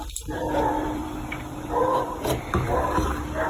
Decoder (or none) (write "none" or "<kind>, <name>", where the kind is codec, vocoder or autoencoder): vocoder, BigVGAN v2